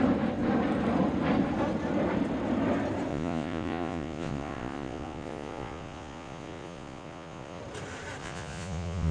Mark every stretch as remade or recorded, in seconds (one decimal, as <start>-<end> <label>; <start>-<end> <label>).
0.0-3.1 recorded; 3.1-7.6 remade; 7.6-8.2 recorded; 8.2-9.1 remade